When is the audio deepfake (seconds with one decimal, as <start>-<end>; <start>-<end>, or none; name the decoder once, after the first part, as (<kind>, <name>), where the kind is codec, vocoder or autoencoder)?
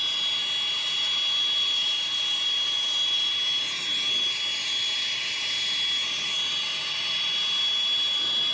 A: none